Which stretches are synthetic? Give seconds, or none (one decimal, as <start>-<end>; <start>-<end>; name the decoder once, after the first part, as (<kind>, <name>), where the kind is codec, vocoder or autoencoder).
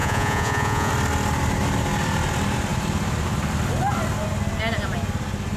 0.0-0.9 (vocoder, Vocos)